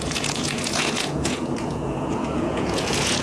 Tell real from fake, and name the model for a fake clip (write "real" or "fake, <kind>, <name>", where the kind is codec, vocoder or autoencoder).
fake, vocoder, Vocos